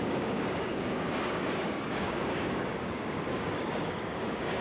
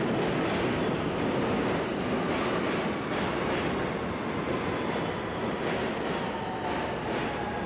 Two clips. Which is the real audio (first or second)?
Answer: second